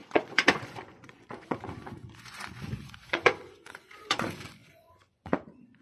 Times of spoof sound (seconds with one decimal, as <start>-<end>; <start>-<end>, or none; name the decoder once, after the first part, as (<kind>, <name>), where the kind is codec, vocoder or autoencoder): 0.0-5.8 (vocoder, Vocos)